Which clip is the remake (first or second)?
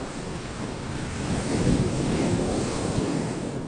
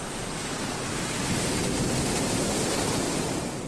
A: first